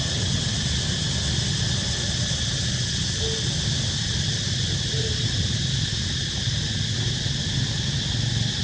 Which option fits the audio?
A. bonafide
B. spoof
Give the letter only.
A